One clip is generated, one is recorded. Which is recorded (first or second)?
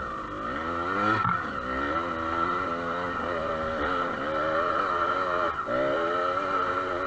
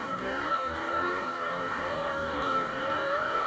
first